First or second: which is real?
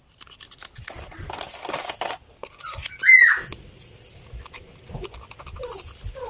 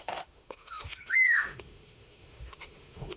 first